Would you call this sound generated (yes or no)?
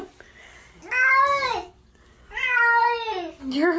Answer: no